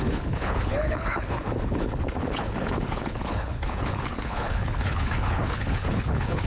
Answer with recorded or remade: remade